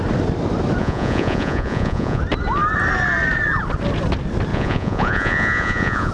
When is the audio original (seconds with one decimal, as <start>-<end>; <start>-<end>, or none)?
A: 0.0-0.8; 2.2-4.5